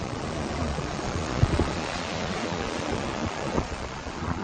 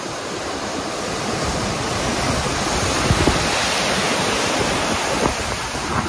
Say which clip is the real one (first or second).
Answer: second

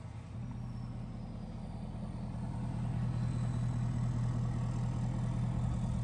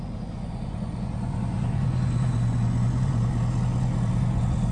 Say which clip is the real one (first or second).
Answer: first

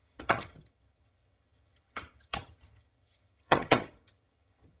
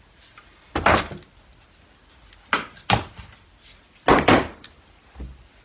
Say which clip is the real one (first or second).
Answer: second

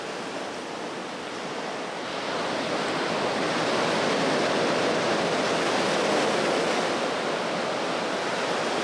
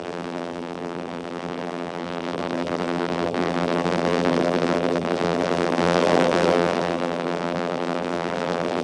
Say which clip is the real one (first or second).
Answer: first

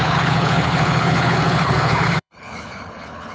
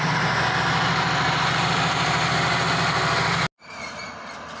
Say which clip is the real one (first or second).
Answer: second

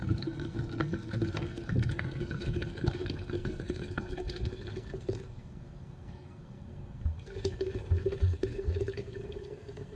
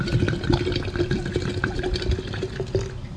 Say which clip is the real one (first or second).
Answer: second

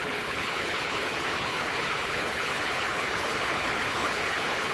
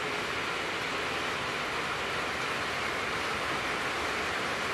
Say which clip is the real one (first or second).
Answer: second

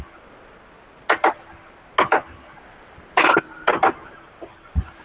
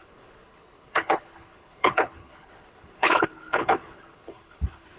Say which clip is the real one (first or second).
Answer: first